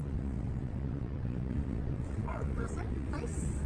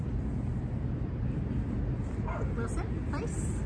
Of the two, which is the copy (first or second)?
first